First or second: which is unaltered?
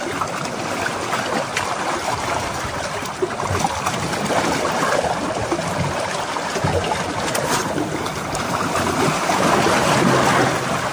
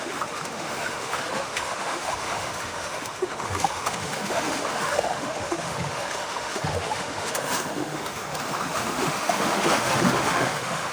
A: first